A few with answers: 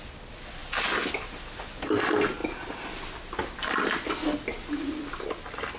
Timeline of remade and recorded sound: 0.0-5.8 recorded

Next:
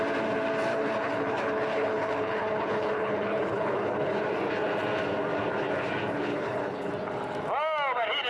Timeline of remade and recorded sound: 0.0-0.7 recorded; 0.7-4.2 remade; 4.2-6.3 recorded; 6.3-6.9 remade; 6.9-8.3 recorded